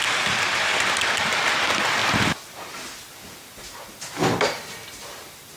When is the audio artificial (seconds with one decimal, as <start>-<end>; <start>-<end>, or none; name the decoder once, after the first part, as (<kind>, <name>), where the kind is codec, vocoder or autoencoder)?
0.0-0.8 (vocoder, BigVGAN v2)